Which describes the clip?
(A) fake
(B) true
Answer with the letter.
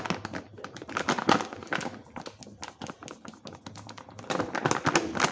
B